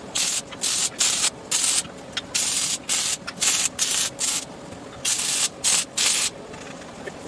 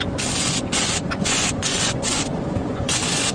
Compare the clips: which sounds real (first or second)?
first